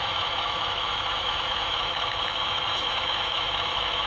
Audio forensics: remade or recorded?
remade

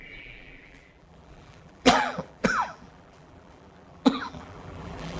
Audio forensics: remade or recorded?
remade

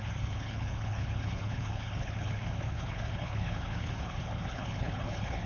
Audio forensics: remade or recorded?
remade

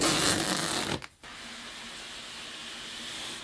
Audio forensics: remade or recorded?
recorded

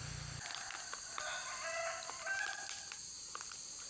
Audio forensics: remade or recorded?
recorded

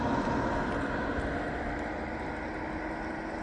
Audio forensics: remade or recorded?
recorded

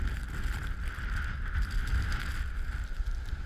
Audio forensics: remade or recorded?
recorded